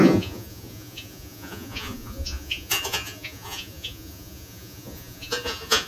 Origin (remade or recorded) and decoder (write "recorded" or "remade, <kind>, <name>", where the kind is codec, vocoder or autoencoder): remade, vocoder, Vocos